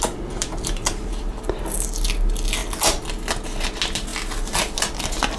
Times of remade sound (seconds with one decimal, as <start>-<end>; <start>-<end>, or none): none